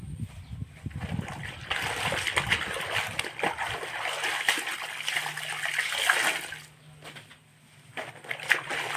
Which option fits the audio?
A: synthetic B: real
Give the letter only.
B